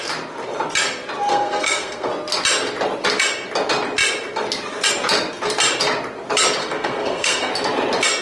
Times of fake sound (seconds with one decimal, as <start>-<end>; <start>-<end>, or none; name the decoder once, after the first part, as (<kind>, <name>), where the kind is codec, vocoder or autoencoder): 1.3-2.1 (codec, SNAC); 6.6-7.5

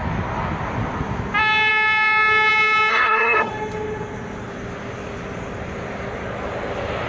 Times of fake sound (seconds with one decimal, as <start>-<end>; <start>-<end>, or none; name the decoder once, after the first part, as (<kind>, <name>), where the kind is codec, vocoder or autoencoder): 2.9-3.5 (codec, SNAC)